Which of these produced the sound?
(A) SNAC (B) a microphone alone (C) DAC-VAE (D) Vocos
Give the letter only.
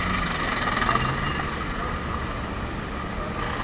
B